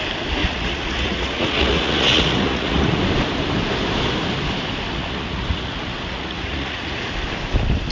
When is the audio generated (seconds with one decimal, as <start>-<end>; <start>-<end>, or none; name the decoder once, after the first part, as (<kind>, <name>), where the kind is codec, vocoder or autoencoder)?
0.4-3.0 (vocoder, Vocos); 4.9-7.1